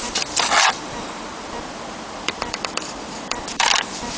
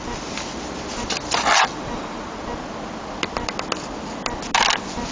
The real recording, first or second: second